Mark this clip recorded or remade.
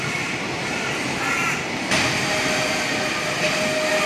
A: recorded